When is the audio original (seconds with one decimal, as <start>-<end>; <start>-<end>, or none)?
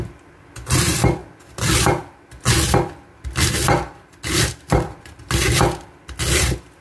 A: 0.0-6.8